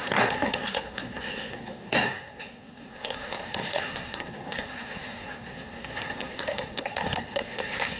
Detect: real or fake fake